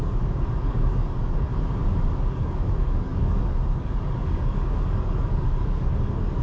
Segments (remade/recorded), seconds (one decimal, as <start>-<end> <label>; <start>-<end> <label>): 0.0-1.5 remade; 1.5-2.1 recorded; 2.1-6.4 remade